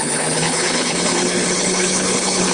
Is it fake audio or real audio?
fake